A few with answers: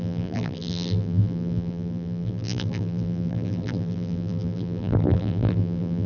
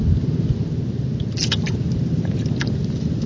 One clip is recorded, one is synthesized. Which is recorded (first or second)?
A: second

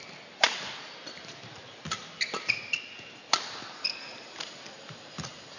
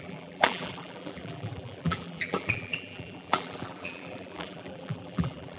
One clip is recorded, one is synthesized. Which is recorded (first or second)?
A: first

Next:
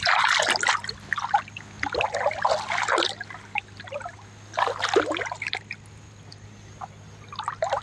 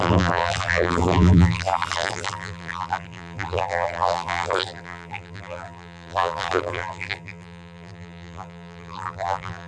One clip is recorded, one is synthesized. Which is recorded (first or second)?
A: first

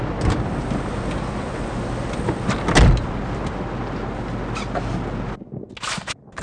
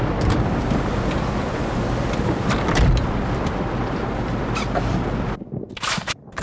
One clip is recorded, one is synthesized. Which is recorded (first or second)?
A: first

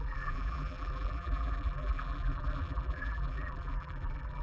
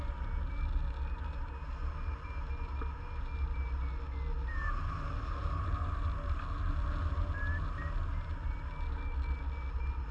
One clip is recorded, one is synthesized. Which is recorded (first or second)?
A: second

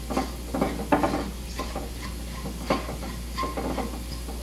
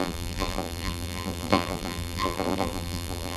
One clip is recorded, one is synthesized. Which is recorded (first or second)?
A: first